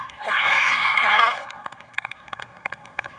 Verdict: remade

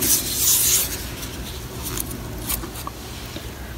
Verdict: recorded